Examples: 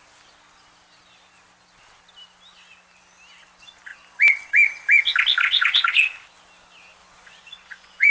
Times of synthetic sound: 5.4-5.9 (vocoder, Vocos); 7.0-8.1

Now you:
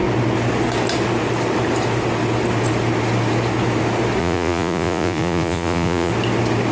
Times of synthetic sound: 4.2-6.1 (vocoder, Vocos)

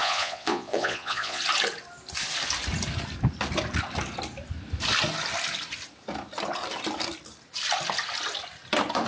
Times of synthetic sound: 0.0-1.4 (vocoder, Vocos)

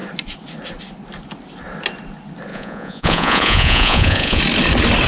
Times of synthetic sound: 2.5-4.4 (vocoder, Vocos)

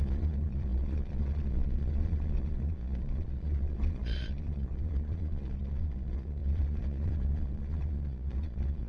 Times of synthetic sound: 0.0-8.9 (vocoder, Vocos)

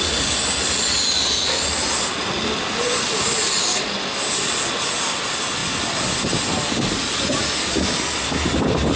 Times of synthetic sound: none

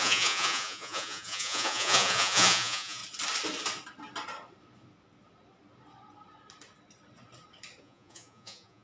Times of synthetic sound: 0.0-3.0 (vocoder, Vocos); 7.8-8.8